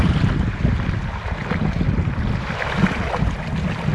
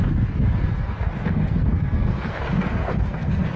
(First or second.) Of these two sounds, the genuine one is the first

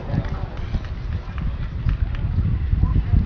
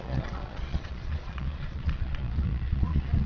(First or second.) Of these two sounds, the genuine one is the first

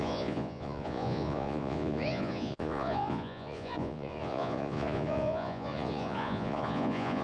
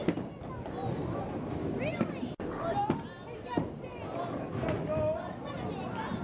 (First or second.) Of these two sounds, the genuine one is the second